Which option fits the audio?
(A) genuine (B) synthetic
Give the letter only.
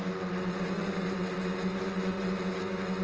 A